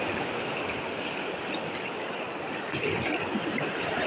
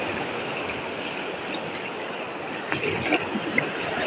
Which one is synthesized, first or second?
first